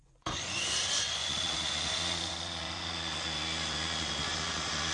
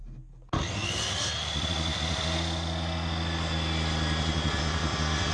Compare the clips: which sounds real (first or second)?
second